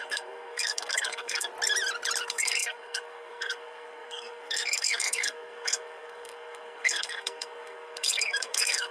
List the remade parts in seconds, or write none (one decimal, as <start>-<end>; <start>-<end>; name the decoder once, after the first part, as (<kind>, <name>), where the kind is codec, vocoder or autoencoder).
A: 0.0-1.5 (codec, SNAC); 2.2-8.9